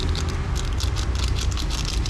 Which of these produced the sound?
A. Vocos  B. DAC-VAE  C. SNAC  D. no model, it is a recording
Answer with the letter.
D